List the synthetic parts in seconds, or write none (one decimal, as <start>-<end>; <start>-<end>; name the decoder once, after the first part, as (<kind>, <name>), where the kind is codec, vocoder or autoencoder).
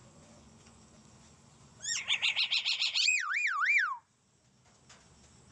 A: 0.0-3.3 (vocoder, Vocos)